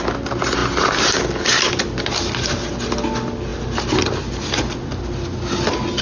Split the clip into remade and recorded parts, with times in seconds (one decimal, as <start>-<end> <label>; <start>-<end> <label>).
0.0-6.0 recorded